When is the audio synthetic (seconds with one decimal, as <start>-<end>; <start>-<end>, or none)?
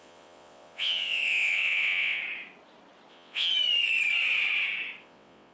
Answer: 0.0-2.2; 3.1-3.5; 5.0-5.5